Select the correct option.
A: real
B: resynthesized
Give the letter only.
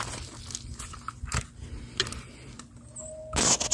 A